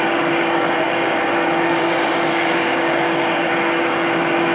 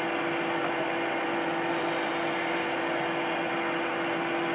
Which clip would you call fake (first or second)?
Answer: first